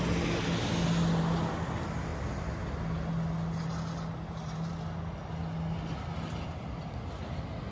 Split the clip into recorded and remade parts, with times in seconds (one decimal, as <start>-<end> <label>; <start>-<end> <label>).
0.0-7.7 recorded